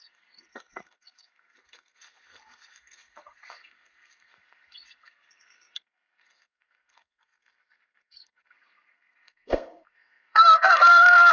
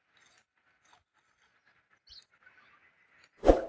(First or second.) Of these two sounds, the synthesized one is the first